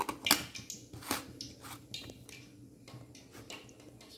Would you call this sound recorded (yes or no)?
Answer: yes